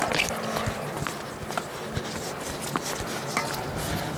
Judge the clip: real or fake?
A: real